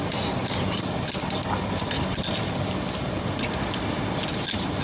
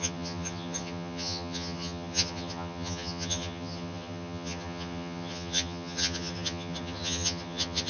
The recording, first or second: first